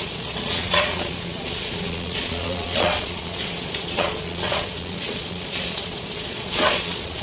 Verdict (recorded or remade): remade